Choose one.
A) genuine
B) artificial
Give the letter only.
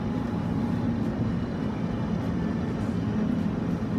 A